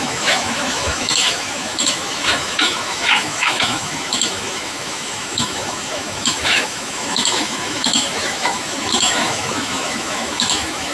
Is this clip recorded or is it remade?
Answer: remade